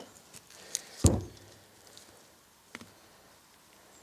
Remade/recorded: recorded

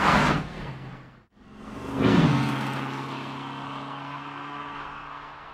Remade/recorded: remade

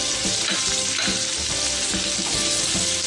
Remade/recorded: recorded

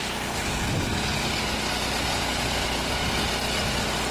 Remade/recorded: recorded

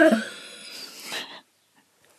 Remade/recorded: recorded